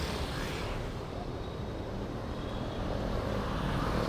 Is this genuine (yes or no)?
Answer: no